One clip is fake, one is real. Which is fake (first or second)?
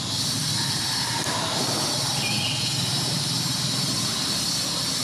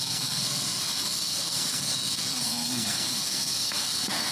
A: second